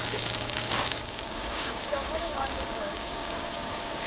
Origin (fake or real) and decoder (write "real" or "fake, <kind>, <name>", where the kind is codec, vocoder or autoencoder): fake, codec, DAC